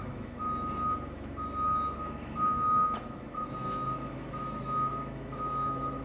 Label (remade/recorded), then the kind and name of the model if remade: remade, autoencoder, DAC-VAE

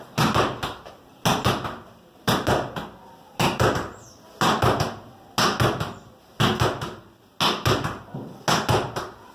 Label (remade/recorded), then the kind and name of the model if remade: recorded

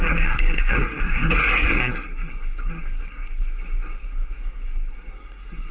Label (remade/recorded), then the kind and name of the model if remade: remade, codec, SNAC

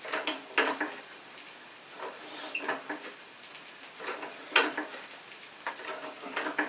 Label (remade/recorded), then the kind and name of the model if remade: recorded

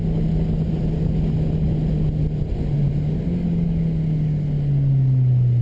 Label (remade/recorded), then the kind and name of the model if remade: recorded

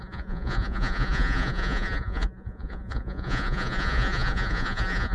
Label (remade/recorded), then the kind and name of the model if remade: remade, vocoder, Vocos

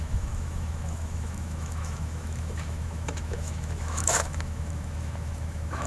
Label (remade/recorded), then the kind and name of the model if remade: remade, autoencoder, DAC-VAE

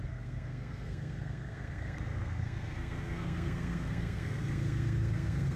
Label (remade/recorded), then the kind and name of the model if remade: remade, codec, SNAC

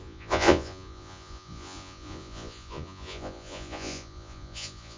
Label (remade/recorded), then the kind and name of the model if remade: remade, vocoder, Vocos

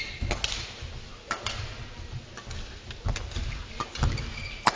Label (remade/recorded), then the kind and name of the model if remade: recorded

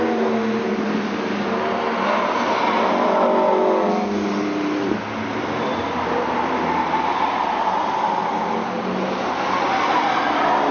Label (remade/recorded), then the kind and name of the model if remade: recorded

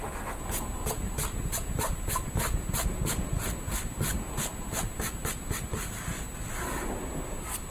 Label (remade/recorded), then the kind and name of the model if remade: recorded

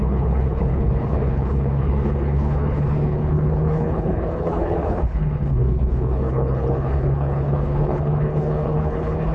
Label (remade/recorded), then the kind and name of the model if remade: remade, codec, HILCodec